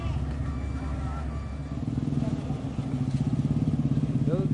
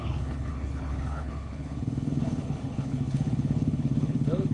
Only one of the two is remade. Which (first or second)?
second